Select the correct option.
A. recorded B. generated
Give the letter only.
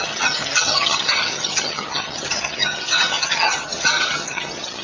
B